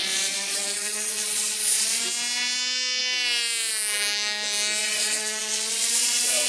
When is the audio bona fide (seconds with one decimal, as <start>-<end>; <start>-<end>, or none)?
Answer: 2.0-4.8

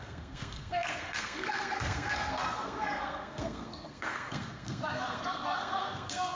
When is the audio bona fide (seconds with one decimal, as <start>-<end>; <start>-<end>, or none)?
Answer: none